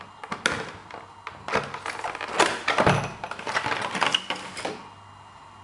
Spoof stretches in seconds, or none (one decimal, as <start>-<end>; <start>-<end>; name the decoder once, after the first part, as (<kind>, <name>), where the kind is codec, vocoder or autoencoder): none